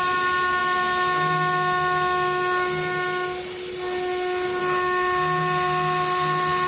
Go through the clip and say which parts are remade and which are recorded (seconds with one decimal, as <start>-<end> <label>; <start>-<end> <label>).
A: 0.0-6.7 recorded